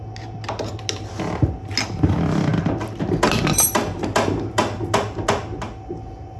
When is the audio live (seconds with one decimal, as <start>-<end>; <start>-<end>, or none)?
0.0-6.4